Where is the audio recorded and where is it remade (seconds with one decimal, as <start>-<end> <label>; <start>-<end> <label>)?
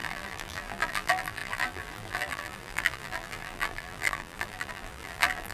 0.0-5.5 remade